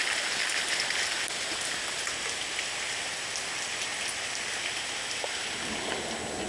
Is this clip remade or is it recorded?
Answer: recorded